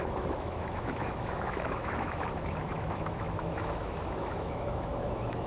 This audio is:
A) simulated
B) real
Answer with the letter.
A